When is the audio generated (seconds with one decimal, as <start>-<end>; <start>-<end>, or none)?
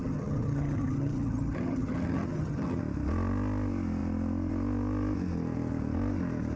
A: 0.0-2.8